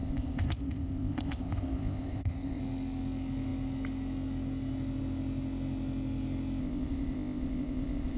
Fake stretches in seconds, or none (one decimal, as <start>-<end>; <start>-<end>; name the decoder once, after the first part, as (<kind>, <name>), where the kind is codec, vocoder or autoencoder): 0.0-2.6 (codec, ZipCodec); 6.6-8.2